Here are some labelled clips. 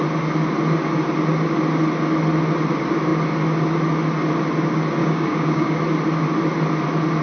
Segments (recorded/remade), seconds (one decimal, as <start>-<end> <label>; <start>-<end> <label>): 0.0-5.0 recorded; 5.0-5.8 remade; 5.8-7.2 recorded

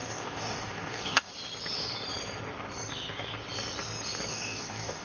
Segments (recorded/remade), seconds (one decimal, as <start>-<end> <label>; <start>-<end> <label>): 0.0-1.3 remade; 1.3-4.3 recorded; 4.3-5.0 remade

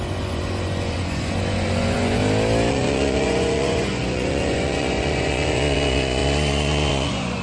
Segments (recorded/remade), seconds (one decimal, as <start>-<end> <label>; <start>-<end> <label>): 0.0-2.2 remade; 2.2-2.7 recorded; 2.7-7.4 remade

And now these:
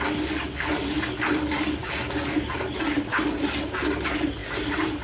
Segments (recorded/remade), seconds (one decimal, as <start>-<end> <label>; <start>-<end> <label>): 0.0-4.4 recorded; 4.4-5.0 remade